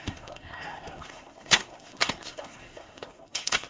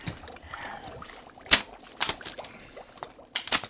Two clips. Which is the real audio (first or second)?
second